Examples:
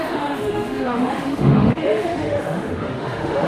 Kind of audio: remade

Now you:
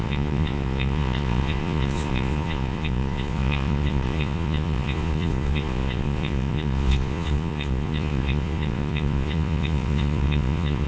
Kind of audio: remade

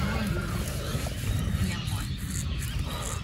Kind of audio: recorded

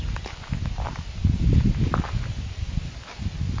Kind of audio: recorded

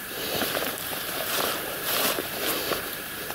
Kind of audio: remade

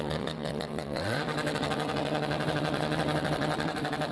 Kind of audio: remade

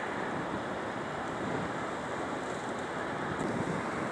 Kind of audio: remade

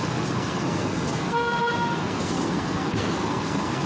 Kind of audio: remade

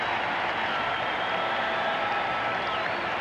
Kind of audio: recorded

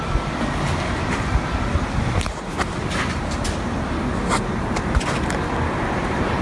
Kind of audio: recorded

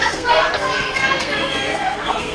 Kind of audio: remade